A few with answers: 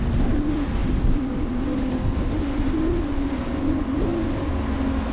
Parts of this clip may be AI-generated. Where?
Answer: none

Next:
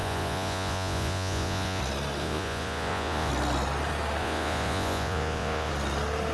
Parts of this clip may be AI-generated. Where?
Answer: 0.0-1.8 (vocoder, Vocos); 2.2-3.3; 4.2-5.7

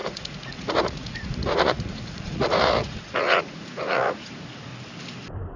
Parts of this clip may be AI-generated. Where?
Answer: 0.0-4.7 (vocoder, Vocos)

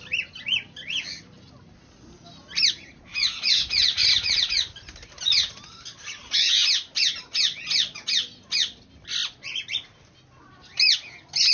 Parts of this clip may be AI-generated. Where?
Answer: none

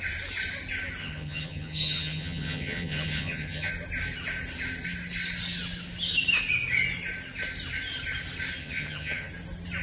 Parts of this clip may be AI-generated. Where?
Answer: 1.0-3.7 (vocoder, HiFi-GAN); 8.6-9.3

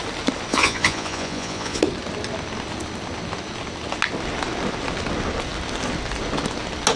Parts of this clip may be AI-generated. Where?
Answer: 0.5-1.8 (vocoder, Vocos)

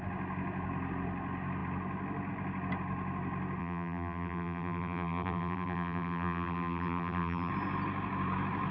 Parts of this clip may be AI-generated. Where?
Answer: 3.6-7.5 (vocoder, BigVGAN v2)

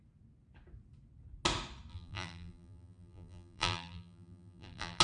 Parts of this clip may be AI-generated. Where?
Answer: 1.9-5.0 (vocoder, BigVGAN v2)